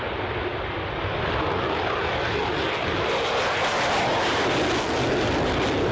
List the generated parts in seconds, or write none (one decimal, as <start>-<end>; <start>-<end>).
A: none